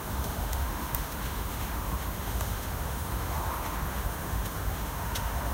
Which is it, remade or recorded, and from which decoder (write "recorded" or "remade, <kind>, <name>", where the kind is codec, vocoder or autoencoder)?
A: remade, autoencoder, DAC-VAE